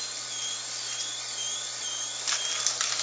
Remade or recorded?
recorded